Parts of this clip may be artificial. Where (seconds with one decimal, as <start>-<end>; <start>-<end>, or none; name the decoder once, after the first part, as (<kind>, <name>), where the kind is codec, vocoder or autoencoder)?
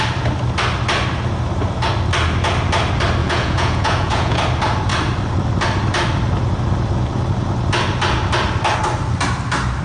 3.2-4.4 (vocoder, Vocos)